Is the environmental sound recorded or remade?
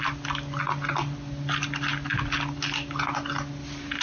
recorded